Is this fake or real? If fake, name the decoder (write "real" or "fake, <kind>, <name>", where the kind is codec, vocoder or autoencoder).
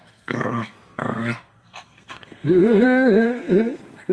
fake, codec, SNAC